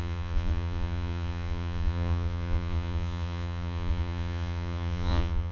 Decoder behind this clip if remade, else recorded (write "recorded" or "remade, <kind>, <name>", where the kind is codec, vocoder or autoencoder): remade, vocoder, Vocos